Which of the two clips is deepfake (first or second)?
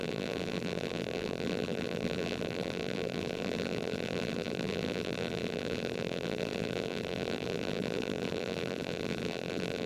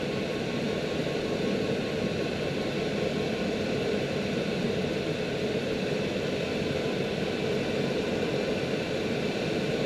first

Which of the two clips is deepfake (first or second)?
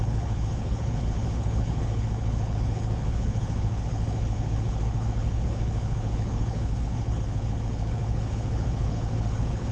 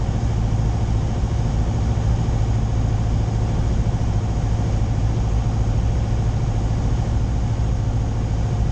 first